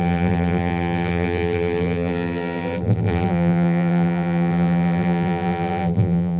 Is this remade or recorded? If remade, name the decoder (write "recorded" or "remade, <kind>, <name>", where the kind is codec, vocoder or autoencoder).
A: remade, vocoder, BigVGAN v2